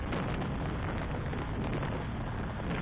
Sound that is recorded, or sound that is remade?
recorded